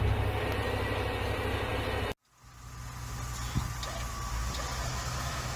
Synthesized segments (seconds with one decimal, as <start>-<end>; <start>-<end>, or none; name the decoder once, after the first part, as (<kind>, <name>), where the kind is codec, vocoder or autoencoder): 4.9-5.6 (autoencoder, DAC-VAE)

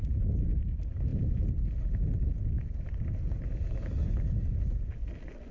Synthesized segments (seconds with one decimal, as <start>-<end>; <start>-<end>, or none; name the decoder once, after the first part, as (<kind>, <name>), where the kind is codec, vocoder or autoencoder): none

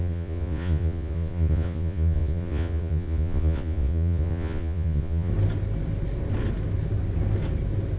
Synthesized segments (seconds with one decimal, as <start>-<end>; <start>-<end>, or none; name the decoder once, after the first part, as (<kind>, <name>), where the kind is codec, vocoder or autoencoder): 0.0-5.3 (vocoder, Vocos)

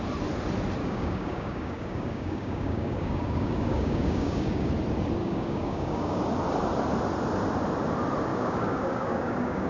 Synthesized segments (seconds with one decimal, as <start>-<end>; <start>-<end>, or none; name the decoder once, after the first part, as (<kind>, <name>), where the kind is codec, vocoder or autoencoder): 0.8-4.7 (codec, DAC); 5.2-6.2; 8.3-9.7

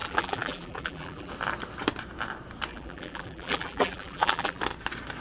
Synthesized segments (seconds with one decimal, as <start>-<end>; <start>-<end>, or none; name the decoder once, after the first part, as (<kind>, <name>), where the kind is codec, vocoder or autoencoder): 0.0-1.3 (vocoder, BigVGAN v2); 2.7-4.6